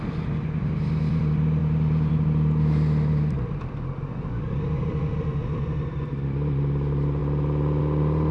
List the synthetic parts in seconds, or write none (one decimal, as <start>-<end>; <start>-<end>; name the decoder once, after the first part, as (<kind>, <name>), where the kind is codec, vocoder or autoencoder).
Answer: none